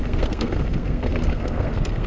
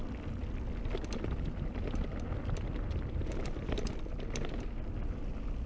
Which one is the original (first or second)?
second